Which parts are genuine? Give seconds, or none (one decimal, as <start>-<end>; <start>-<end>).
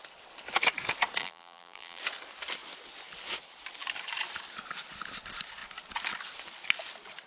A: 0.0-1.2; 2.0-7.3